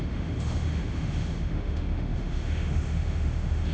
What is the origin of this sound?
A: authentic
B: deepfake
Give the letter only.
B